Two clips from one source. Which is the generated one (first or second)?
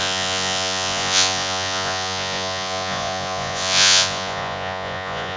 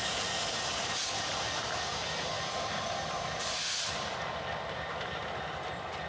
first